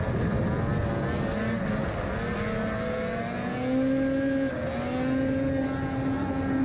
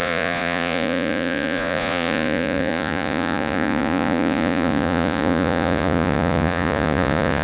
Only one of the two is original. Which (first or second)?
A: first